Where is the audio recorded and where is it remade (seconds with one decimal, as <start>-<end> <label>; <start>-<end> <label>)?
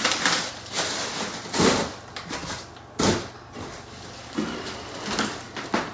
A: 0.0-5.9 recorded